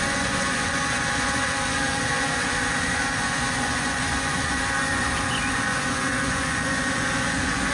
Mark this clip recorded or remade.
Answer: remade